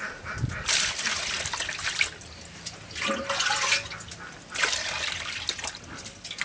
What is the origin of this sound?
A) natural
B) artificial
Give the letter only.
A